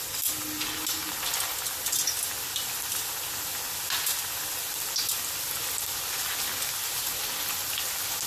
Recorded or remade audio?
recorded